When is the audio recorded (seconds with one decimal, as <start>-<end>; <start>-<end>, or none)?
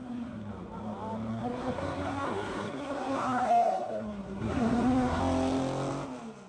0.5-1.3; 5.2-6.5